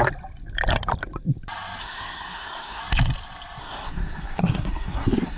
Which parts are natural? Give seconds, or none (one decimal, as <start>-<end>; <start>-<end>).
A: 0.0-1.8; 2.8-3.6